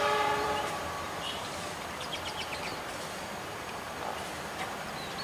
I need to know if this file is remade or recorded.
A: remade